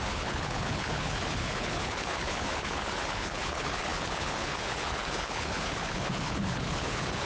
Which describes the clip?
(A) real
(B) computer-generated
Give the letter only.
B